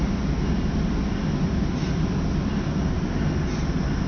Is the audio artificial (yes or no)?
no